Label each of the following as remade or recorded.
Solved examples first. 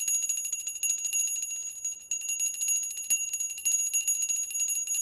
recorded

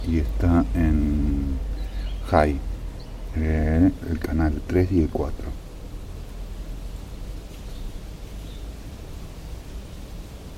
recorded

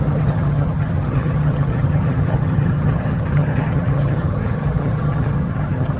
remade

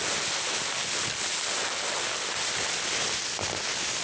recorded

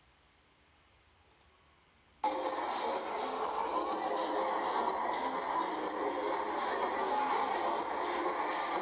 recorded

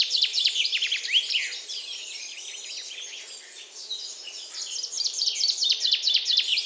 remade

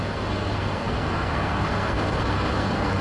remade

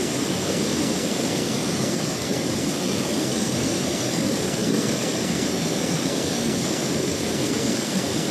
remade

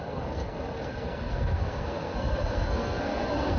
remade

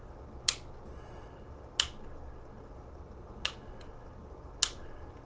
recorded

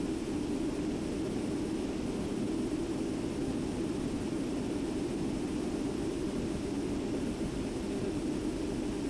recorded